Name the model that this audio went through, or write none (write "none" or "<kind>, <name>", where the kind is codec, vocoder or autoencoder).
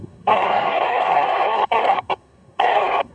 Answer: codec, SNAC